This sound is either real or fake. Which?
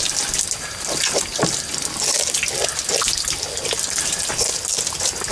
real